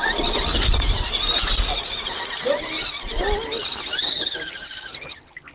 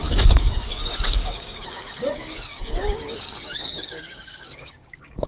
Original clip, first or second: first